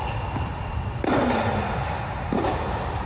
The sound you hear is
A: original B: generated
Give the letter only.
A